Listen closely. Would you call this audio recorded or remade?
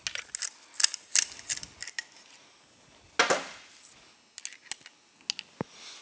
recorded